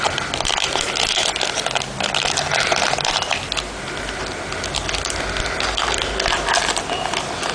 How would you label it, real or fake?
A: real